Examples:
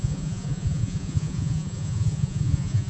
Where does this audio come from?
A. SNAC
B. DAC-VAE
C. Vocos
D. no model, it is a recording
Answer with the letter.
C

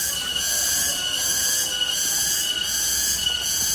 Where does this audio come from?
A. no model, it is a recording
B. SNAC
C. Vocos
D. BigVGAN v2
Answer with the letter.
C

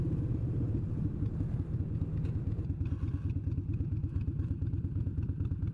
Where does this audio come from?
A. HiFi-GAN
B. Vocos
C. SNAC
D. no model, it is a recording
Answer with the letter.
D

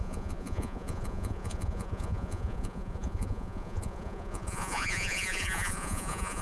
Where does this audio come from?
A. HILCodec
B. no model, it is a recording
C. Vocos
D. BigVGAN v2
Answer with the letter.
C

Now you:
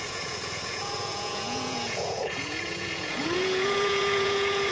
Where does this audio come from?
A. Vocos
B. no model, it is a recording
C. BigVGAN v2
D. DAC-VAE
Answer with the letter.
A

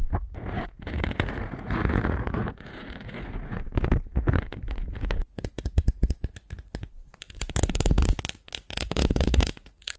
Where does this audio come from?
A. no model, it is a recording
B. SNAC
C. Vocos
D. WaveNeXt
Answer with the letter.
C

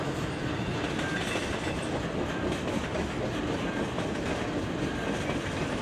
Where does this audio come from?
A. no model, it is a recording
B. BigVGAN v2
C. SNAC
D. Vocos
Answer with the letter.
A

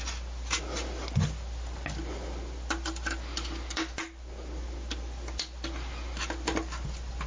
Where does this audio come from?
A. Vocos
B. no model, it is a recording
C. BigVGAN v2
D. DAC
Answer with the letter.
B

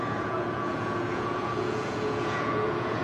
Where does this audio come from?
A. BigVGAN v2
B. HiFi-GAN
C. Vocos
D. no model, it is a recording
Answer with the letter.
C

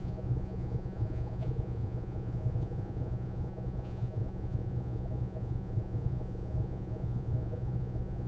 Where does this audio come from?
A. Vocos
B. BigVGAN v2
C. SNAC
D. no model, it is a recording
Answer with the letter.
A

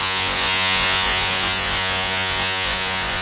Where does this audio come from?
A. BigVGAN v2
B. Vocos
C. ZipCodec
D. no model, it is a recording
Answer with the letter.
B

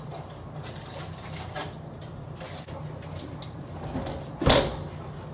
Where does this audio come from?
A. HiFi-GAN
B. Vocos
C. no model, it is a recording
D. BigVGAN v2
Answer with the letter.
C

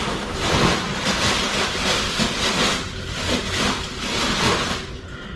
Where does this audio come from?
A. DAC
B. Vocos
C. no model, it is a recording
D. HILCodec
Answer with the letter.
C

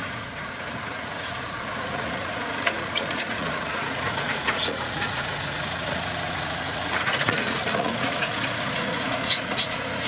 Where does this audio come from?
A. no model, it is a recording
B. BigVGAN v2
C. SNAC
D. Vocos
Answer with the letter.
D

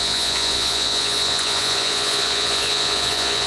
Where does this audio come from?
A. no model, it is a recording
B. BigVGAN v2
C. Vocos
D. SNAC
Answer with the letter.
C